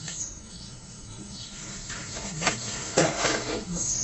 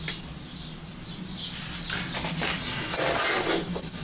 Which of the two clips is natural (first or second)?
second